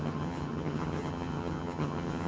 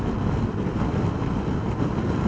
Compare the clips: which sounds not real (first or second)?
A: first